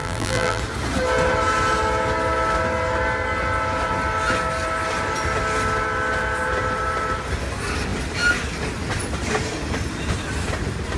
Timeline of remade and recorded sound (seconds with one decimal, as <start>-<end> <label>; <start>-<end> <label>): 0.0-0.6 remade; 0.6-11.0 recorded

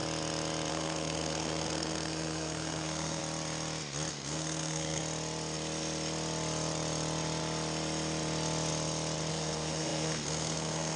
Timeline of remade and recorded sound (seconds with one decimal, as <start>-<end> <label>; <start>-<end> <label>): 0.0-0.7 recorded; 0.7-3.2 remade; 3.2-4.1 recorded; 4.1-5.0 remade; 5.0-9.3 recorded; 9.3-11.0 remade

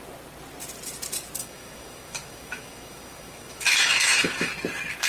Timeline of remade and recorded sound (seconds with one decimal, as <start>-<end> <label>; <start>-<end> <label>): 0.0-1.4 recorded; 1.4-4.5 remade; 4.5-5.1 recorded

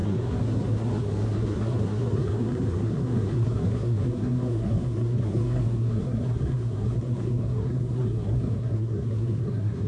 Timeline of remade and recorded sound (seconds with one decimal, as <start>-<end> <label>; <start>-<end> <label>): 0.0-9.9 remade

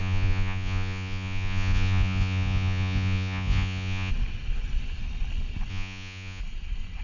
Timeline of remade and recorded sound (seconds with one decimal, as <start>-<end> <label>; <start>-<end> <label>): 0.0-4.1 remade; 4.1-5.7 recorded; 5.7-6.4 remade; 6.4-7.0 recorded

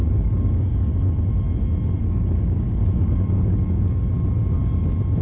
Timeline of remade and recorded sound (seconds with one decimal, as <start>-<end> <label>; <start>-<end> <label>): 0.0-0.9 remade; 0.9-2.0 recorded; 2.0-4.1 remade; 4.1-5.2 recorded

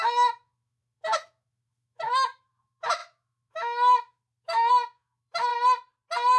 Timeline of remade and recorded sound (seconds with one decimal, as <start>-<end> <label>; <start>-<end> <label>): 0.0-5.5 remade; 5.5-6.4 recorded